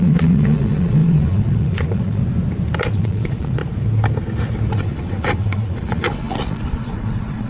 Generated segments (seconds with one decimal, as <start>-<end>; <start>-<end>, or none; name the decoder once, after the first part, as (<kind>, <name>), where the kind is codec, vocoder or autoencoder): 0.0-2.2 (vocoder, Vocos); 2.9-3.6; 4.7-7.5

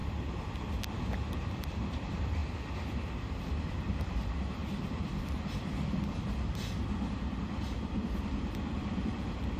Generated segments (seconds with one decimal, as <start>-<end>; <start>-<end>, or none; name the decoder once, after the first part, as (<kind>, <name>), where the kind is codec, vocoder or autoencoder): 1.4-2.4 (vocoder, BigVGAN v2); 3.3-9.6

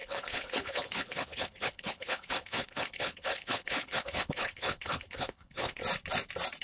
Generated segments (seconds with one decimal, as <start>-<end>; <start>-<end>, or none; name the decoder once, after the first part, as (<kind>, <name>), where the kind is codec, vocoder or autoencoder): 0.0-5.8 (codec, HILCodec)

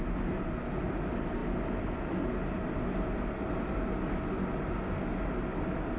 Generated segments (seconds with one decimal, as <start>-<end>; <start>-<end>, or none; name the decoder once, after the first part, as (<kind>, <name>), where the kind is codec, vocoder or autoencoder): none